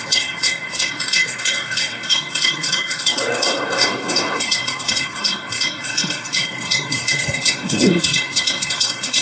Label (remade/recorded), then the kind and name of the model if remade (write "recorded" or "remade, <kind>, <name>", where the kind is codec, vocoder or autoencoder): remade, codec, SNAC